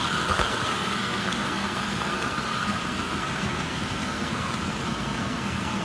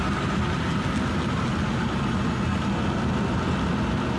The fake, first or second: first